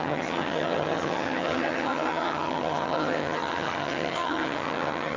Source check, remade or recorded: remade